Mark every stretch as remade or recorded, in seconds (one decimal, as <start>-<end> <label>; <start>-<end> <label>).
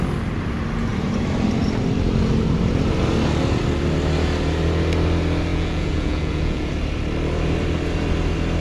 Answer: 0.0-5.5 recorded; 5.5-6.7 remade; 6.7-8.6 recorded